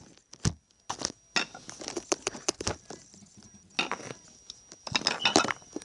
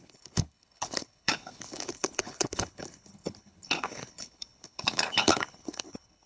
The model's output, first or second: second